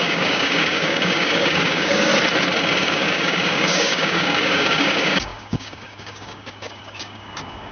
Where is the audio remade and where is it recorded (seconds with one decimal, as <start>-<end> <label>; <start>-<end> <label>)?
0.0-2.1 remade; 2.1-2.8 recorded; 2.8-7.7 remade